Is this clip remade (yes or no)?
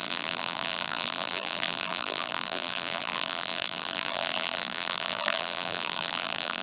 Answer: yes